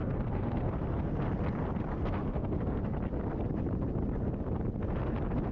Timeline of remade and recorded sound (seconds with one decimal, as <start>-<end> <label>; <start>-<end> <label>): 0.0-0.7 remade; 0.7-1.9 recorded; 1.9-2.8 remade; 2.8-5.5 recorded